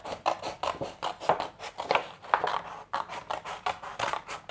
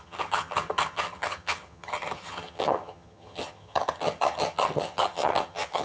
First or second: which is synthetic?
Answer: second